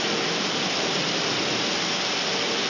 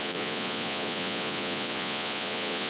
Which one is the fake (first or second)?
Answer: second